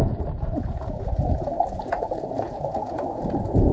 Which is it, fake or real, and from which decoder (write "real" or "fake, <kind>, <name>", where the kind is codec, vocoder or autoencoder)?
fake, vocoder, Vocos